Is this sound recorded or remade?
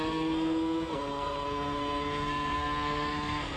remade